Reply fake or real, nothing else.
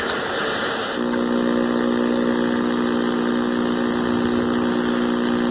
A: real